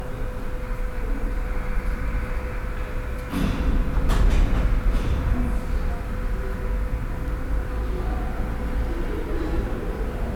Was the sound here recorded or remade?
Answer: recorded